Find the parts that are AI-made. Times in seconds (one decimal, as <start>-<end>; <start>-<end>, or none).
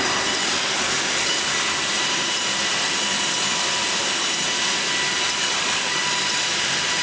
0.4-1.4; 5.4-6.0